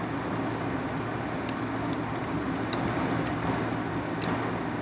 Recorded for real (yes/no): yes